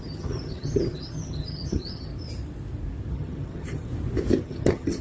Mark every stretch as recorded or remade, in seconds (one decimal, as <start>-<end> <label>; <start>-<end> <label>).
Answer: 0.0-2.1 remade; 2.1-3.1 recorded; 3.1-3.9 remade; 3.9-4.4 recorded; 4.4-5.0 remade